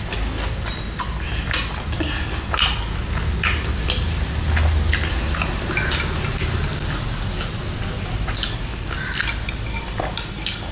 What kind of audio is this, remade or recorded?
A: recorded